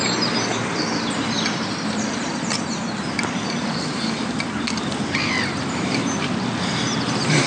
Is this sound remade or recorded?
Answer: recorded